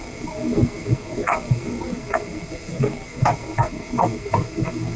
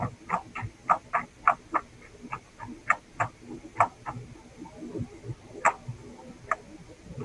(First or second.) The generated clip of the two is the first